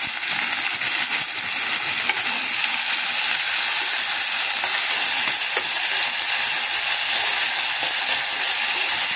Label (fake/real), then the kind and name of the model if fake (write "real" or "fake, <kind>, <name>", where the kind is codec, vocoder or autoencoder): real